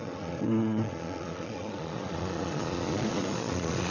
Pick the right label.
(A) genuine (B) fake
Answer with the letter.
B